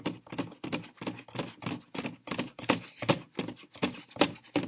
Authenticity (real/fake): real